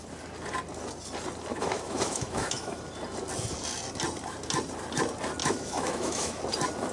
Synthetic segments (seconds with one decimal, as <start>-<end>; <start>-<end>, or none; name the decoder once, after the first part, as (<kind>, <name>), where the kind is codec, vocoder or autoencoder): 1.5-2.8 (autoencoder, DAC-VAE); 5.4-6.4